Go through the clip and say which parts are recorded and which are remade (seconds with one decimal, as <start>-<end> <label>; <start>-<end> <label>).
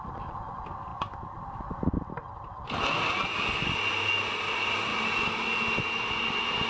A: 0.0-6.7 recorded